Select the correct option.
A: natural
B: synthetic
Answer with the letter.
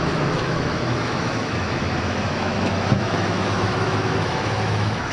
B